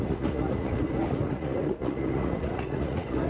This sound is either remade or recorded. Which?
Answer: remade